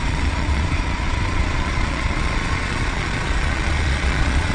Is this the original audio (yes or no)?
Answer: no